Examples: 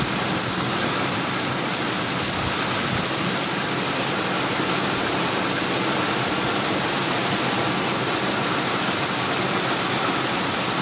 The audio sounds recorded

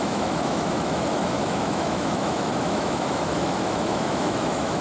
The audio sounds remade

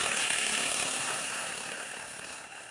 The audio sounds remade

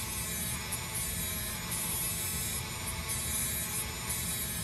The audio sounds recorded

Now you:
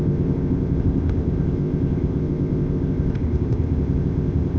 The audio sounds remade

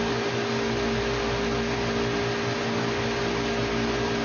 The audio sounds recorded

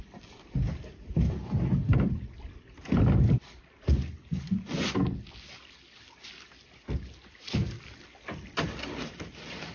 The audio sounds recorded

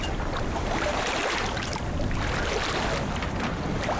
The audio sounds recorded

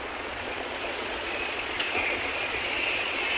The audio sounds remade